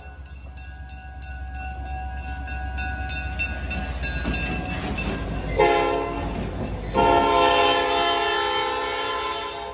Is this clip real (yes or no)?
yes